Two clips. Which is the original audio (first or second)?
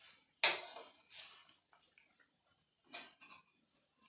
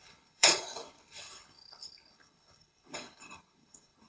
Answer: first